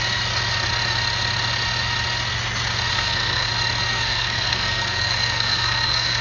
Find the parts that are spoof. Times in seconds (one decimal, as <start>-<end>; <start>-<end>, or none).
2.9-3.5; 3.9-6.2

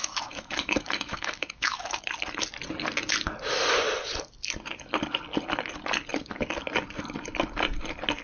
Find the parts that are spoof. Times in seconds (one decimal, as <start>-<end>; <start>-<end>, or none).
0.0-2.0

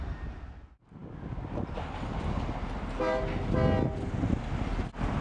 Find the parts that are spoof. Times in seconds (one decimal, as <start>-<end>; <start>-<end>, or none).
none

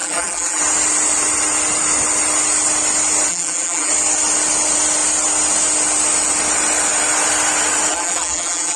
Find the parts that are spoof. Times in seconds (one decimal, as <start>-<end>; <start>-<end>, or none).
0.0-0.6; 3.3-3.9; 7.9-8.8

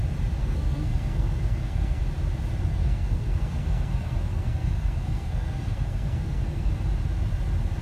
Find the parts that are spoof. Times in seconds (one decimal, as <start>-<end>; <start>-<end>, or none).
0.4-2.0; 2.7-6.7

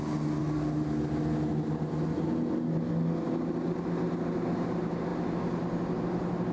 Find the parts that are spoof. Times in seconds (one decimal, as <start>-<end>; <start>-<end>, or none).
none

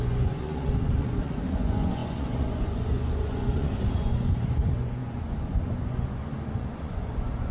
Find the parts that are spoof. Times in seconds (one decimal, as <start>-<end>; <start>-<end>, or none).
0.0-7.5

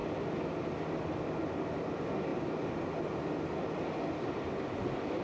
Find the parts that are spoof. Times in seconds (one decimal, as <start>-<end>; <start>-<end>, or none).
none